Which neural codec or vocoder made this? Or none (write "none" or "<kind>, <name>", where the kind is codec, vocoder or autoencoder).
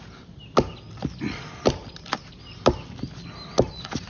none